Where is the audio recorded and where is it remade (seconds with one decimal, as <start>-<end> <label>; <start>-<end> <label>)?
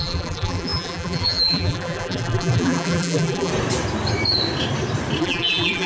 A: 0.0-3.5 remade; 3.5-5.2 recorded; 5.2-5.9 remade